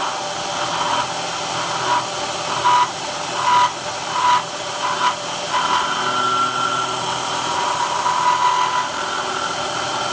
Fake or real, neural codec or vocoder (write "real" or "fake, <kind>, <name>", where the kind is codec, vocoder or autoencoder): real